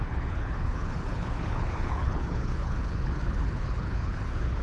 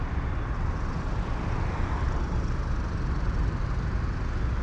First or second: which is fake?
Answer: first